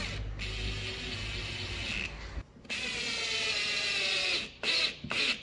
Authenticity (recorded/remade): recorded